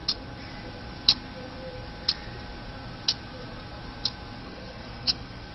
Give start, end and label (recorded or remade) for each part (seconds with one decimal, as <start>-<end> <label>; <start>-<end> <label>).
0.0-4.4 recorded; 4.4-5.5 remade